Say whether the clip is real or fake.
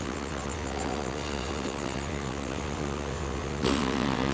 fake